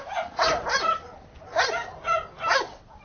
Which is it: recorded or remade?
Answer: recorded